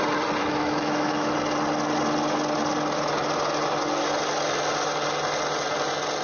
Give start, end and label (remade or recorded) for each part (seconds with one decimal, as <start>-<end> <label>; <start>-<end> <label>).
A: 0.0-0.4 recorded; 0.4-1.3 remade; 1.3-6.2 recorded